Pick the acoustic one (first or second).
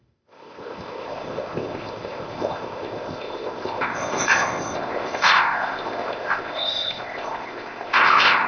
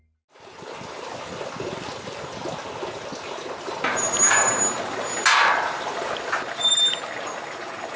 second